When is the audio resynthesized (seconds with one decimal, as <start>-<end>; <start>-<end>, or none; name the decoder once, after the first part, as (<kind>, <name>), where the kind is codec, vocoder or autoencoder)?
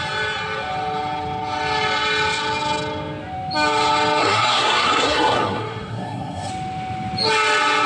4.2-6.5 (codec, SNAC)